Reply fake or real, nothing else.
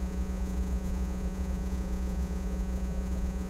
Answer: fake